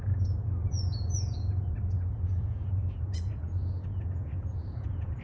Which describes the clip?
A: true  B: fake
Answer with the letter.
B